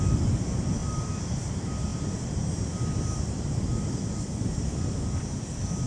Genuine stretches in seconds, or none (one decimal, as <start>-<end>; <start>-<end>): 0.0-0.8; 1.5-1.9; 4.6-5.9